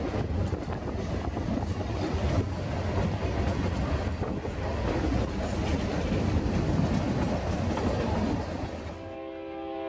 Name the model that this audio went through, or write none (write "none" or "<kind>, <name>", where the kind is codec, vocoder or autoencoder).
none